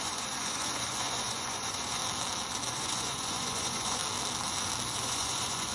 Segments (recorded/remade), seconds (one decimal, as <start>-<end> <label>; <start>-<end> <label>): 0.0-2.0 remade; 2.0-2.7 recorded; 2.7-4.0 remade; 4.0-5.0 recorded; 5.0-5.7 remade